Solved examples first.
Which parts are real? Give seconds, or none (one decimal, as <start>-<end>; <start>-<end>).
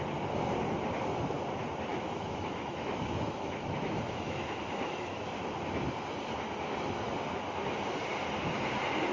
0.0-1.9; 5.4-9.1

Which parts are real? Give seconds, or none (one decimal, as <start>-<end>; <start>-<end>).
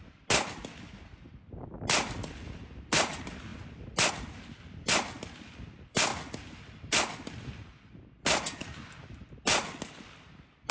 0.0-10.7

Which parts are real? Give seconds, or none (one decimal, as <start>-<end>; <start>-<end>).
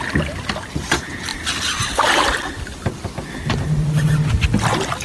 0.0-5.0